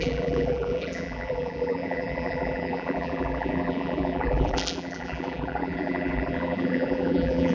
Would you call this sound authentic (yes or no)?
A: no